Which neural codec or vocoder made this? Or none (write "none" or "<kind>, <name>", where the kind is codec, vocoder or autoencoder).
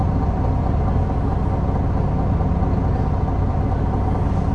none